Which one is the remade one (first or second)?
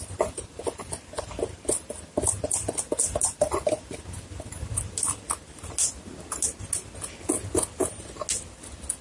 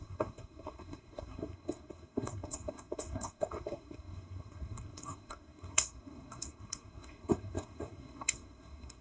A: second